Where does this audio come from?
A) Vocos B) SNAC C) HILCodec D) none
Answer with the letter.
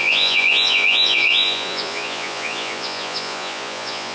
A